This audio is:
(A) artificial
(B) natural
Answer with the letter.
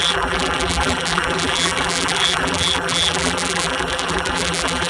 A